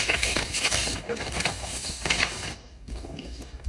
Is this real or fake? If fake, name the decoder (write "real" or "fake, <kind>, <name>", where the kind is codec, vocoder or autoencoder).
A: fake, codec, DAC